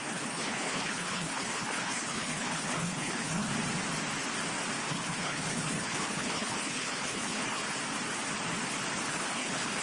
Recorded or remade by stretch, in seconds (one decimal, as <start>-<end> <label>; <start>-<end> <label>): 0.0-3.5 remade; 3.5-4.9 recorded; 4.9-7.6 remade; 7.6-9.1 recorded; 9.1-9.8 remade